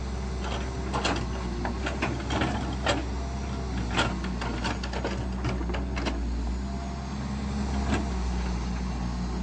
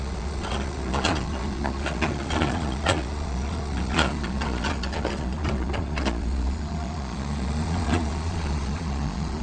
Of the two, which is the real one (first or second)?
first